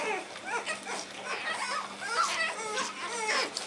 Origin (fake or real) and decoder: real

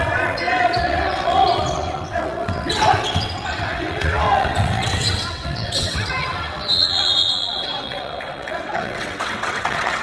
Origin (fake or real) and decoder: fake, vocoder, WaveNeXt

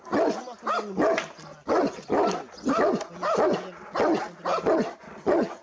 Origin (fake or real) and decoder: real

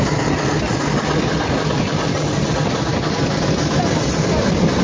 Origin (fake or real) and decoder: real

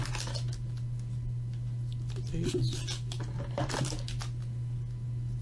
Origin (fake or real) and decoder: real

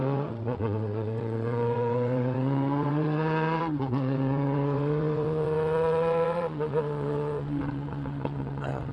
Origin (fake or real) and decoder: fake, vocoder, WaveNeXt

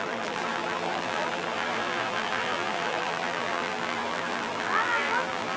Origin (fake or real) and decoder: fake, vocoder, BigVGAN v2